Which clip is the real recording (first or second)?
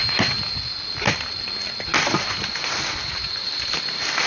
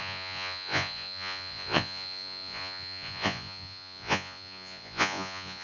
first